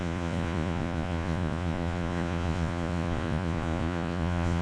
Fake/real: fake